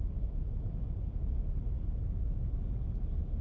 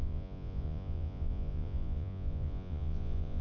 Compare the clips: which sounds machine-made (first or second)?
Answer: second